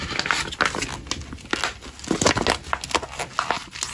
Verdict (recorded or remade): recorded